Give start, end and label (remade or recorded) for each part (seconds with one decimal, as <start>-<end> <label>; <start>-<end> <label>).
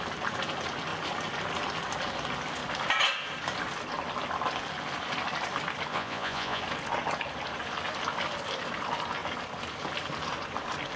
0.0-5.9 recorded; 5.9-6.6 remade; 6.6-11.0 recorded